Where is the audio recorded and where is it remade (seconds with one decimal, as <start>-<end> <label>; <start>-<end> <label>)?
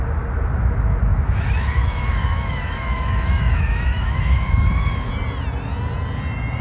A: 0.0-1.1 recorded; 1.1-5.1 remade; 5.1-6.6 recorded